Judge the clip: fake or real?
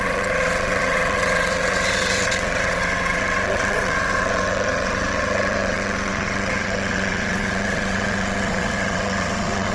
fake